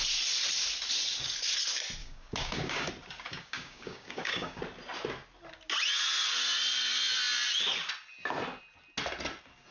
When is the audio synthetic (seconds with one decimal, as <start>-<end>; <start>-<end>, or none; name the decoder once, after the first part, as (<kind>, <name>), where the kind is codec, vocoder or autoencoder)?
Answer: 2.0-2.9 (codec, DAC); 3.3-4.6